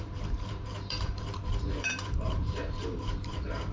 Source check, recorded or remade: remade